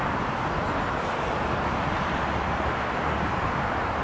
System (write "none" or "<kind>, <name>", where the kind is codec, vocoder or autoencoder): none